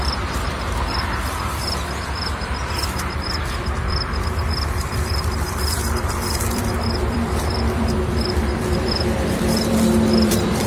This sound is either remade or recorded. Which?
remade